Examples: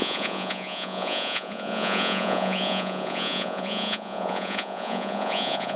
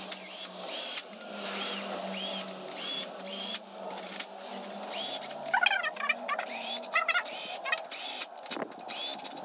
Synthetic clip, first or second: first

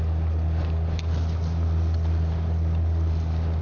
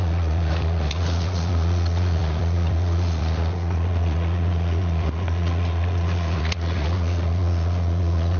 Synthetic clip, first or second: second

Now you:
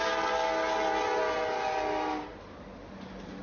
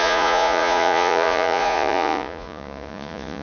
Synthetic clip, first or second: second